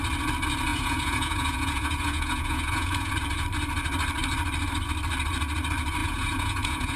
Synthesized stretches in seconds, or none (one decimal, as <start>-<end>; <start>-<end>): 0.7-3.1; 6.0-7.0